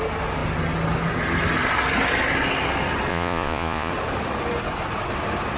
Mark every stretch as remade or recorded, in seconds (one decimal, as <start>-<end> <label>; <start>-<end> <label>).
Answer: 0.0-3.1 recorded; 3.1-3.9 remade; 3.9-5.6 recorded